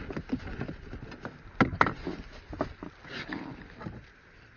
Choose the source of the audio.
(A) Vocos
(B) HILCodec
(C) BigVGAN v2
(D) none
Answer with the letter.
D